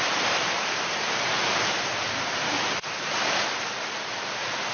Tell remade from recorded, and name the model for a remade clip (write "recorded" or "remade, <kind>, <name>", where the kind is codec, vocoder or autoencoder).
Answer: recorded